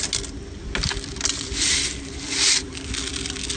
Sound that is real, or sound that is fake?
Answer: real